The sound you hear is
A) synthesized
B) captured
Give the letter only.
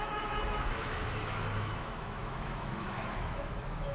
A